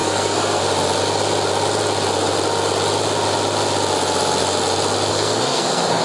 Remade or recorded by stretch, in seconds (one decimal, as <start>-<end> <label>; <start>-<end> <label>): 0.0-0.6 remade; 0.6-5.1 recorded; 5.1-6.0 remade

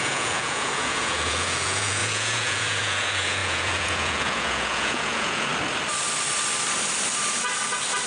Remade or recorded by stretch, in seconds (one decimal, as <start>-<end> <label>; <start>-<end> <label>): 0.0-5.5 remade; 5.5-8.1 recorded

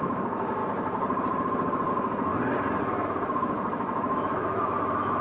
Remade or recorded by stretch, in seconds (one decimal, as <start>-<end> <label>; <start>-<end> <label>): 0.0-0.6 remade; 0.6-1.9 recorded; 1.9-2.3 remade; 2.3-2.8 recorded; 2.8-5.2 remade

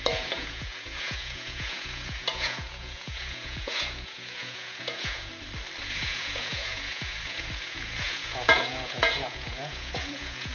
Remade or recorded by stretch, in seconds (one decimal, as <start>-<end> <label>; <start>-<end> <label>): 0.0-5.3 remade; 5.3-5.8 recorded; 5.8-10.5 remade

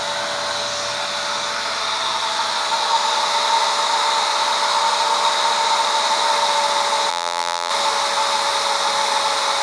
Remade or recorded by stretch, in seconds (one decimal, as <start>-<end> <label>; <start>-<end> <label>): 0.0-7.1 recorded; 7.1-7.7 remade; 7.7-9.6 recorded

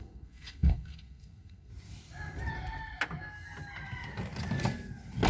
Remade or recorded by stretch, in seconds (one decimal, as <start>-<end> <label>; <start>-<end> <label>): 0.0-1.7 remade; 1.7-5.3 recorded

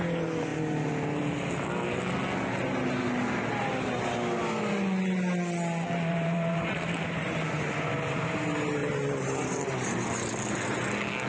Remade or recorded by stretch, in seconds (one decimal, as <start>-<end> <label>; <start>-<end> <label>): 0.0-6.1 recorded; 6.1-7.2 remade; 7.2-8.8 recorded; 8.8-10.9 remade; 10.9-11.3 recorded